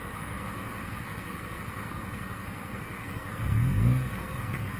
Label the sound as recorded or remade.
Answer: remade